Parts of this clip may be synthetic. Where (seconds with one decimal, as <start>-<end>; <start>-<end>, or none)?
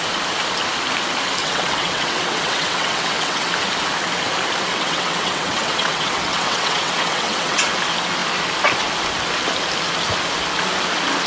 1.4-3.5; 4.7-7.7